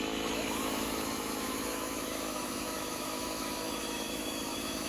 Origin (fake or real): fake